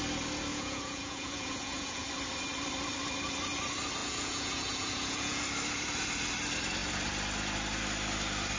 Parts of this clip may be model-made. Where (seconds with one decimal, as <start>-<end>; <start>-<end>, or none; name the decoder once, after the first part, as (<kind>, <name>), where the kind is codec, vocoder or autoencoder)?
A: 0.5-2.1 (vocoder, Vocos); 4.0-5.4

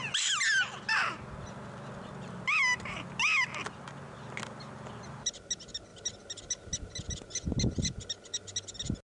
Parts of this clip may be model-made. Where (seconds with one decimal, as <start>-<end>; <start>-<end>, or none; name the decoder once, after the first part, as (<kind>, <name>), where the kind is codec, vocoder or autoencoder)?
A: none

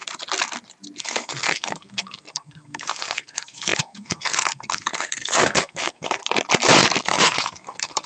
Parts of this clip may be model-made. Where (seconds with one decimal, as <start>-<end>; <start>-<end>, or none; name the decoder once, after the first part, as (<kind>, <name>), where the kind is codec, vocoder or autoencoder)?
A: 1.0-6.2 (codec, SNAC); 7.0-8.1

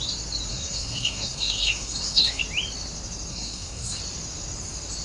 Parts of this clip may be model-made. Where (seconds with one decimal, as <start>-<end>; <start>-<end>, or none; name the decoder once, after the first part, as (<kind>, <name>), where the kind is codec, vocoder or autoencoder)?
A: 0.5-2.4 (codec, SNAC); 3.3-4.0

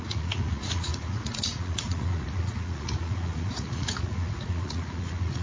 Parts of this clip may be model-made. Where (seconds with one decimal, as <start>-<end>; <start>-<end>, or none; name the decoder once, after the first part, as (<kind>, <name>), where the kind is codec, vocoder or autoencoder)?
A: 0.0-5.4 (vocoder, Vocos)

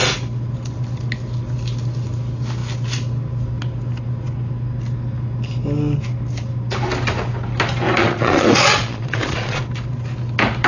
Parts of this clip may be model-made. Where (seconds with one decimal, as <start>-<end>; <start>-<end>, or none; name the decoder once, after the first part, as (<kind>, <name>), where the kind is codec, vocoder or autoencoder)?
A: 8.0-9.6 (vocoder, Vocos)

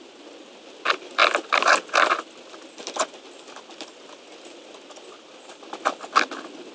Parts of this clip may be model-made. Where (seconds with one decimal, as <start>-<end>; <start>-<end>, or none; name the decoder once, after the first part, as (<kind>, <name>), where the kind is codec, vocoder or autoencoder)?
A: none

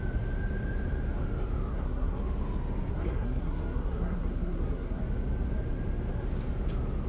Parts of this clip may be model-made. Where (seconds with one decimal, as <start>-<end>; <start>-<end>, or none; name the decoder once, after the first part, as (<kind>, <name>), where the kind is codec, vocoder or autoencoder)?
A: 1.7-2.2 (codec, SNAC); 2.9-5.0